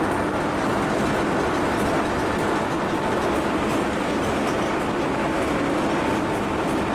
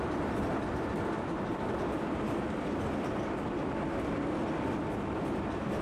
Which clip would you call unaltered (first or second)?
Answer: first